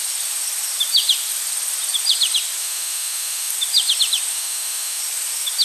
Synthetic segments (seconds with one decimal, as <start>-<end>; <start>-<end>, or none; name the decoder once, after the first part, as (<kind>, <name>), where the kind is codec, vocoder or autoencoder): 2.6-3.5 (autoencoder, DAC-VAE); 4.3-5.0